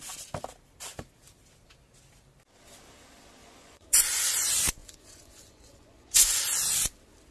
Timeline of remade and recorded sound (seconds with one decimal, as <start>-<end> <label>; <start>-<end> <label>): 0.0-3.4 recorded; 3.4-4.3 remade; 4.3-4.8 recorded; 4.8-6.4 remade; 6.4-7.3 recorded